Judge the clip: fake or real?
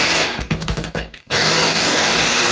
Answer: fake